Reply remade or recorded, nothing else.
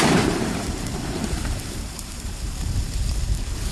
remade